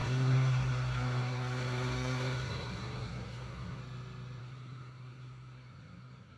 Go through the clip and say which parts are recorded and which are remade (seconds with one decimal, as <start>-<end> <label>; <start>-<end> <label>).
0.0-3.8 remade; 3.8-4.4 recorded; 4.4-6.4 remade